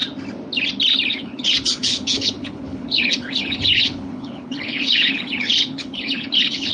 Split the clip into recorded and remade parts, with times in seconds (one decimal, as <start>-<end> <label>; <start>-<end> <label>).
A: 0.0-1.2 recorded; 1.2-6.7 remade